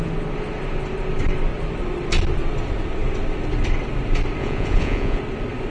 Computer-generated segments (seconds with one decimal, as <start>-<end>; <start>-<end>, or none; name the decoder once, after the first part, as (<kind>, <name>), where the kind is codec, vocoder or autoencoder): 4.4-5.2 (vocoder, Vocos)